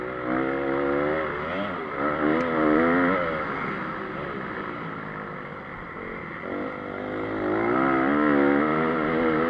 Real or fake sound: real